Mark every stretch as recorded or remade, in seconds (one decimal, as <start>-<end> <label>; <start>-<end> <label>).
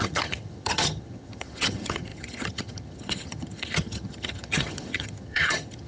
0.0-5.9 remade